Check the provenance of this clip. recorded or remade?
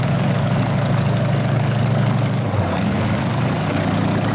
remade